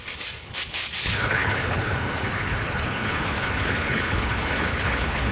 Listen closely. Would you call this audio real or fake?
fake